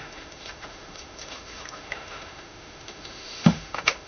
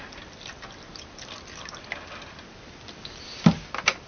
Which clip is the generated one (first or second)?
first